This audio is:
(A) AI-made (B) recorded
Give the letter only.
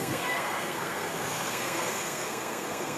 A